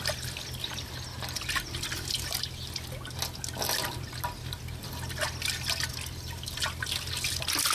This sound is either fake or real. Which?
real